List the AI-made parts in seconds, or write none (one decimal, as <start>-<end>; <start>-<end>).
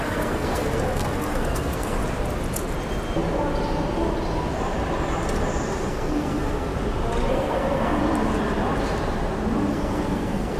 0.0-2.0; 5.9-6.7; 7.3-8.0; 9.7-10.6